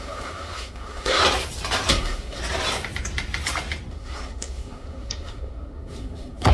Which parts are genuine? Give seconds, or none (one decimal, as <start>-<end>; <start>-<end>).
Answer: 1.2-1.9; 2.4-3.9